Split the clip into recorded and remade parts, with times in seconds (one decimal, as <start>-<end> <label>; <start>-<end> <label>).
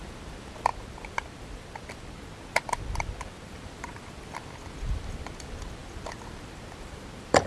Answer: 0.0-7.5 remade